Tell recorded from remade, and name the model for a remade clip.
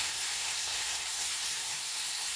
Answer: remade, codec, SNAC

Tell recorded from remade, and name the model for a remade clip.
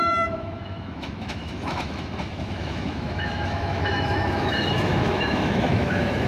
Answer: remade, autoencoder, DAC-VAE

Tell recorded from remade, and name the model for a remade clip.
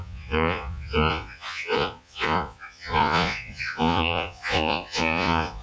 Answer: remade, vocoder, Vocos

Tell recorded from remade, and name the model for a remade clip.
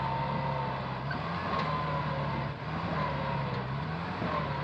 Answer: recorded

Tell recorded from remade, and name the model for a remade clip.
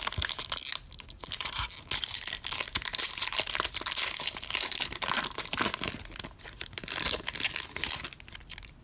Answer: recorded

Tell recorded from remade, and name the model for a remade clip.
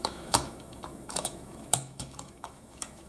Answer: remade, autoencoder, DAC-VAE